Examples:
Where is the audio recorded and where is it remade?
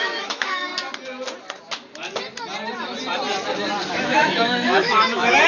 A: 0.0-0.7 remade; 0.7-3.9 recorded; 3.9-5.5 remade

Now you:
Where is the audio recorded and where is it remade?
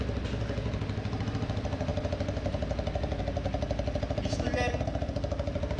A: 0.0-4.9 recorded; 4.9-5.8 remade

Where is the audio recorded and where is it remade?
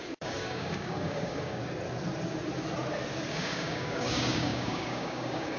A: 0.0-1.6 remade; 1.6-3.3 recorded; 3.3-5.6 remade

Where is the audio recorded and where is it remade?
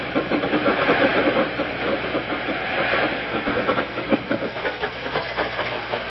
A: 0.0-3.2 recorded; 3.2-6.1 remade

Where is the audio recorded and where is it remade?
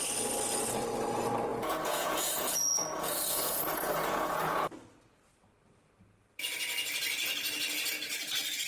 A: 0.0-1.5 recorded; 1.5-4.7 remade; 4.7-8.7 recorded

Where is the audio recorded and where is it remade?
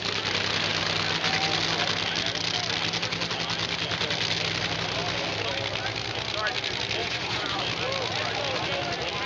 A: 0.0-7.0 recorded; 7.0-7.6 remade; 7.6-9.3 recorded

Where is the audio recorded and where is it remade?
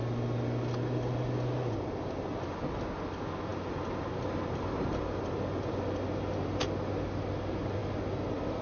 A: 0.0-8.6 recorded